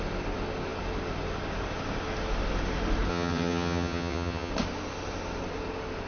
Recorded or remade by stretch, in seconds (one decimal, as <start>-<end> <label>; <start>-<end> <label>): 0.0-3.1 recorded; 3.1-4.5 remade; 4.5-6.1 recorded